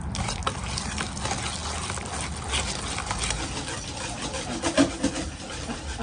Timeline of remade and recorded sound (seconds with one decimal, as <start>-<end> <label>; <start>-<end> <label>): 0.0-6.0 recorded